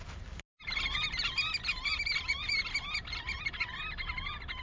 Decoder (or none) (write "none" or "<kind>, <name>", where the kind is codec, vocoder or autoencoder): none